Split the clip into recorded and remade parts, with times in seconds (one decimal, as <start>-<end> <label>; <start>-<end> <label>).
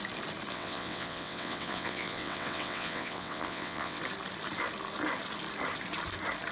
0.0-0.5 recorded; 0.5-4.0 remade; 4.0-6.5 recorded